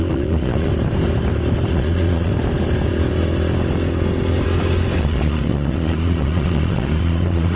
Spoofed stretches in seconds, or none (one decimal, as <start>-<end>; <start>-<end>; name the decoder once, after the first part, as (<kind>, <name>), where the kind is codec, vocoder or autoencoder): 0.0-0.7 (vocoder, Vocos); 1.7-2.3; 5.0-7.6